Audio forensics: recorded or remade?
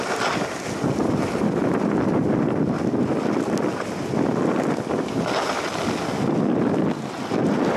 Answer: recorded